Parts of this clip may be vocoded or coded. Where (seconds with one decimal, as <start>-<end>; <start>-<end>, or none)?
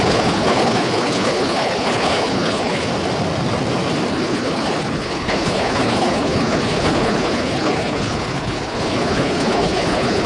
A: 0.0-2.9; 4.1-10.3